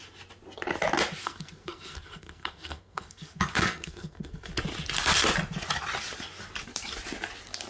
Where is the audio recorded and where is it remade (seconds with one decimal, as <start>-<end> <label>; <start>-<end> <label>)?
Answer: 0.0-1.2 recorded; 1.2-4.5 remade; 4.5-7.7 recorded